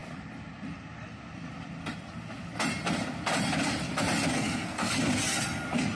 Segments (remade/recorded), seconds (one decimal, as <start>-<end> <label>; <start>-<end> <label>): 0.0-4.3 recorded; 4.3-4.9 remade; 4.9-6.0 recorded